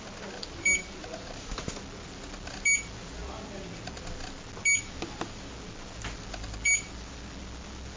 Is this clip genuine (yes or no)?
yes